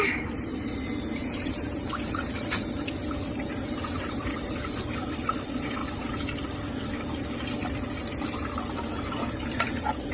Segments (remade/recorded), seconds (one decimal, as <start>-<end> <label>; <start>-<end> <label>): 0.0-5.8 remade; 5.8-9.3 recorded; 9.3-10.1 remade